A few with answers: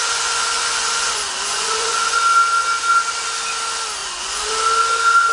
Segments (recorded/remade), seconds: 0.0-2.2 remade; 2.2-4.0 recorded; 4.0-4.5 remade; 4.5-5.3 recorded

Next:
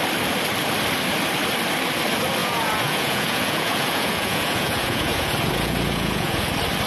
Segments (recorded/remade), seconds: 0.0-2.4 recorded; 2.4-6.5 remade; 6.5-6.9 recorded

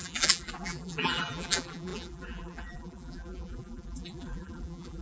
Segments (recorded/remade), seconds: 0.0-5.0 remade

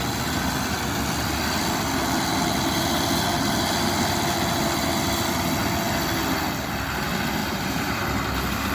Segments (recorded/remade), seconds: 0.0-7.4 recorded; 7.4-8.0 remade; 8.0-8.7 recorded

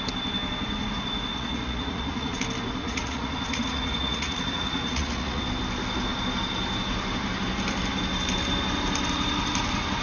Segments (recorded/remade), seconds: 0.0-1.3 recorded; 1.3-2.4 remade; 2.4-2.8 recorded; 2.8-5.4 remade; 5.4-10.0 recorded

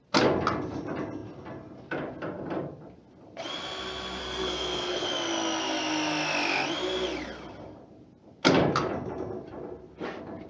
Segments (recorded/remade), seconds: 0.0-4.2 recorded; 4.2-5.1 remade; 5.1-10.5 recorded

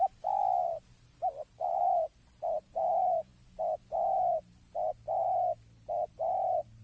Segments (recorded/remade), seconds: 0.0-0.4 remade; 0.4-1.3 recorded; 1.3-3.3 remade; 3.3-6.1 recorded; 6.1-6.8 remade